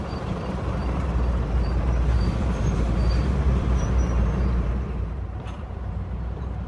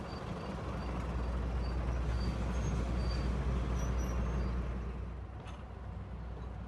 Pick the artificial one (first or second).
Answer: first